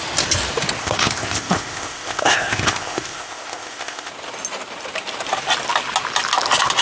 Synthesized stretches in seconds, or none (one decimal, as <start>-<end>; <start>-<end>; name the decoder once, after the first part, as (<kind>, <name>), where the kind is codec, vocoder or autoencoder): 0.8-4.1 (codec, ZipCodec)